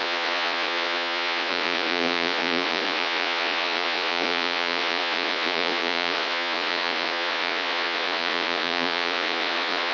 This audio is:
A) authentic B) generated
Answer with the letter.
B